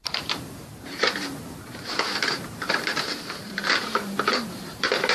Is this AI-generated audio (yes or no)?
yes